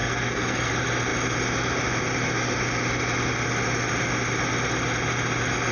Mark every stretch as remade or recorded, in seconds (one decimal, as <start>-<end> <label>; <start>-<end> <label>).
0.0-0.7 remade; 0.7-5.7 recorded